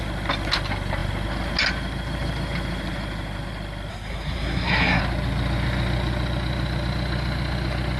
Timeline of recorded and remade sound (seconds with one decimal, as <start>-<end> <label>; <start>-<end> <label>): 0.0-3.9 recorded; 3.9-5.0 remade; 5.0-8.0 recorded